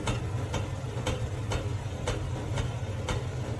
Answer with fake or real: real